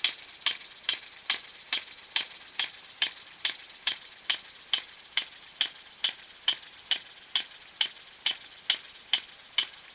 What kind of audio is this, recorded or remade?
recorded